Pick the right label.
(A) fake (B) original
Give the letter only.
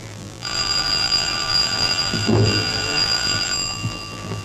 A